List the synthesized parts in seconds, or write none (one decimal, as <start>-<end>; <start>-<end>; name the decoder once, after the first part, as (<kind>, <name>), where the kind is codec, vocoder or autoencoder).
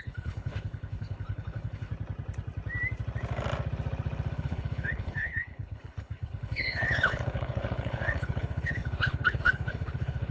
0.0-1.9 (codec, HILCodec); 4.3-10.3